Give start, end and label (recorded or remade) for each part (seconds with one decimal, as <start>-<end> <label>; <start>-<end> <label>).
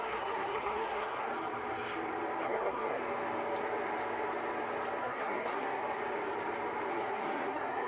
0.0-1.3 remade; 1.3-2.4 recorded; 2.4-3.0 remade; 3.0-5.0 recorded; 5.0-5.8 remade; 5.8-6.9 recorded; 6.9-7.9 remade